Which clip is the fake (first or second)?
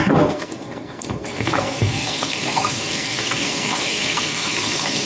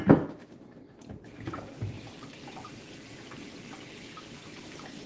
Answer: first